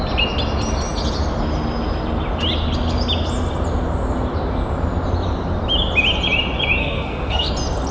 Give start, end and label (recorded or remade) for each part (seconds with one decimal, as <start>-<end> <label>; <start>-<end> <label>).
0.0-6.8 recorded; 6.8-7.5 remade; 7.5-7.9 recorded